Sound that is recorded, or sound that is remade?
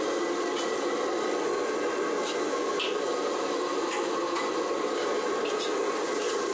recorded